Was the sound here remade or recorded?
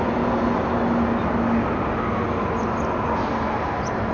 recorded